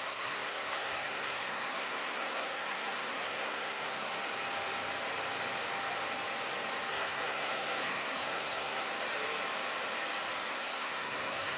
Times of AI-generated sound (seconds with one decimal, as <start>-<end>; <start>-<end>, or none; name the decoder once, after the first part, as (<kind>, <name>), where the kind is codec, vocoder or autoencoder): 0.0-4.1 (codec, SNAC); 6.9-8.9; 10.5-11.6